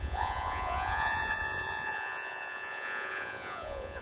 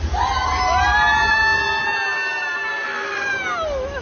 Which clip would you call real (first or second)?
second